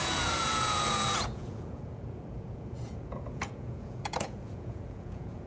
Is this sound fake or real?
fake